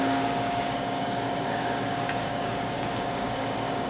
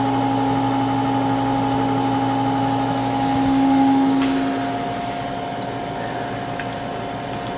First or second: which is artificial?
first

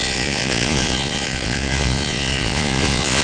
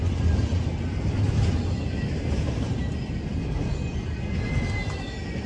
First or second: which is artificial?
first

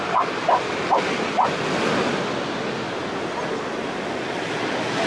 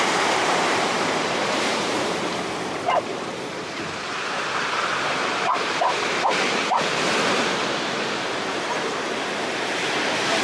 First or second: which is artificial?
second